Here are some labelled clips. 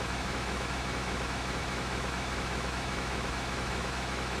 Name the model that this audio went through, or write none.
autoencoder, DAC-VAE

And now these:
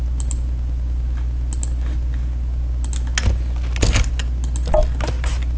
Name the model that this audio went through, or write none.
none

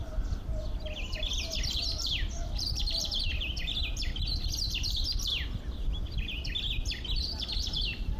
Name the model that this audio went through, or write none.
vocoder, BigVGAN v2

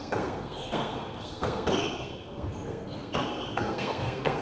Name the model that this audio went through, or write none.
codec, SNAC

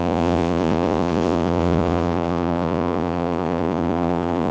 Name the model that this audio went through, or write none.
vocoder, Vocos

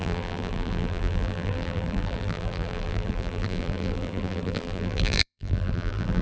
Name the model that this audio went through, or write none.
vocoder, BigVGAN v2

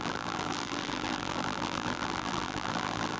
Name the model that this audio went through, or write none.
vocoder, BigVGAN v2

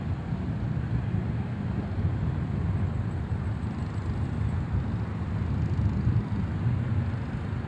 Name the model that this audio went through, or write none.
none